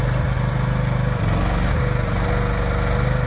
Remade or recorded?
recorded